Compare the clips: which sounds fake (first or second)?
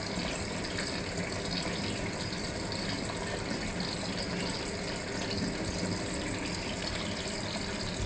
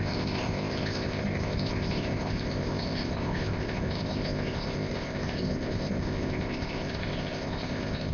second